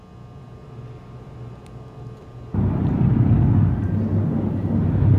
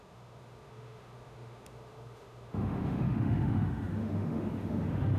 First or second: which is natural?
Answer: first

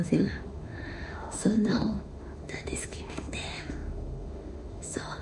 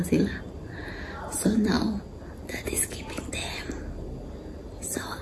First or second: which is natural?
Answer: second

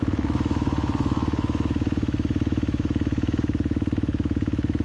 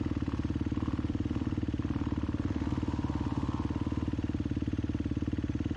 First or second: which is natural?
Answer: second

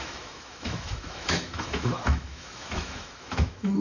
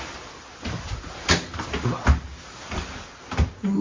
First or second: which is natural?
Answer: second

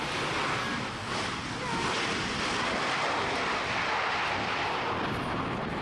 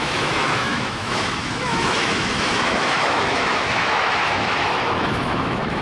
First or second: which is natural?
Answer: first